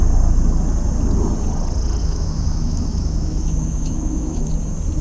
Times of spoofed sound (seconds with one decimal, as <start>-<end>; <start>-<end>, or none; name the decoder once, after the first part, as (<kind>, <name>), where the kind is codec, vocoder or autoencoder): 2.0-4.5 (autoencoder, DAC-VAE)